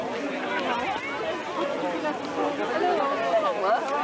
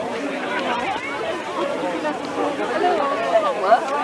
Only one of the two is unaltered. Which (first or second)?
first